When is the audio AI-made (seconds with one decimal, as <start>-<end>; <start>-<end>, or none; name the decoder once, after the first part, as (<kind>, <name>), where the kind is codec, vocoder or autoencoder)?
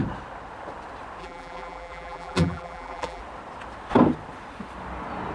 1.2-3.2 (vocoder, BigVGAN v2)